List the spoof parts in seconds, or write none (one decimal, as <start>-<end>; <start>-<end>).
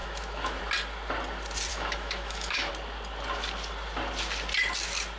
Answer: 0.0-0.6; 1.7-2.7